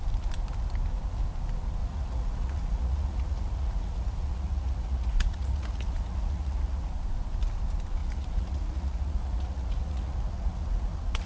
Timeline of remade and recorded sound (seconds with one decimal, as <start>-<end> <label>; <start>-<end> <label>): 0.0-1.8 recorded; 1.8-6.9 remade; 6.9-8.0 recorded; 8.0-11.3 remade